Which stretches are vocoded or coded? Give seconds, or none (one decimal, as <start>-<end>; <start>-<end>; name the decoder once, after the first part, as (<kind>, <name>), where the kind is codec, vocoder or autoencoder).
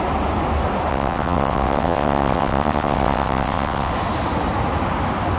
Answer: 0.9-3.9 (vocoder, WaveNeXt)